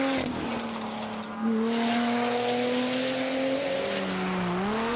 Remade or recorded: recorded